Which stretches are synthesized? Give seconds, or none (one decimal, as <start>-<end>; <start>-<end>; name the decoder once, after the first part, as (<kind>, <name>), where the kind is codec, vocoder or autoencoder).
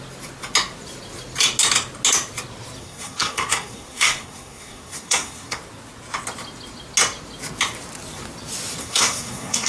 2.8-5.6 (codec, SNAC); 8.8-9.7